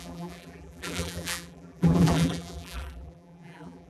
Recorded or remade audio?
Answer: remade